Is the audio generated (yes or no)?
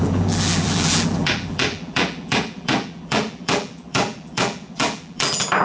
yes